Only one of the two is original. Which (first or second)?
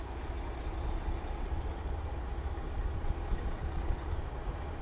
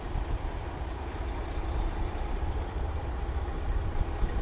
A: first